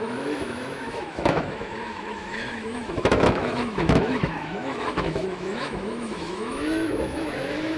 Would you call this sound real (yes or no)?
no